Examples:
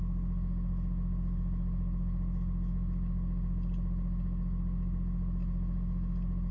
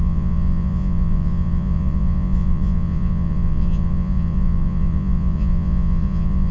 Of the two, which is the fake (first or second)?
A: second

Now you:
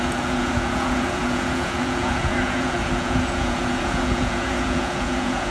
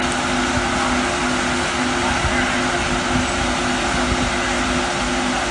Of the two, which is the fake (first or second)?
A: first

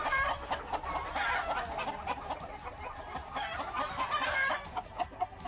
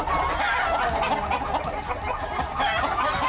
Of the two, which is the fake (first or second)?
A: first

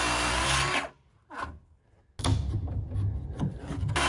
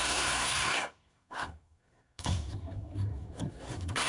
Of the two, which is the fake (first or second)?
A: second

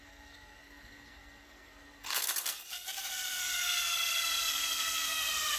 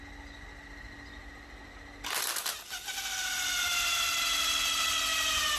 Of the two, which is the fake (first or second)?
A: first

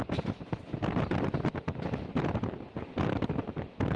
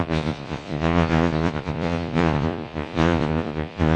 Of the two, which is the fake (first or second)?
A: second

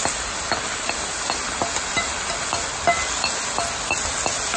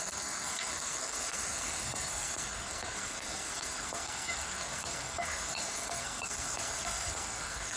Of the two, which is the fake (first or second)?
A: second